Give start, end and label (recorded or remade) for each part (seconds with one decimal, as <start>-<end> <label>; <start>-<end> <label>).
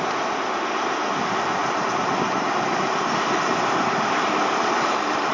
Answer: 0.0-1.6 recorded; 1.6-3.0 remade; 3.0-3.5 recorded; 3.5-5.3 remade